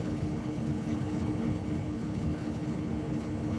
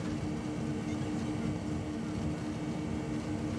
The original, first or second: second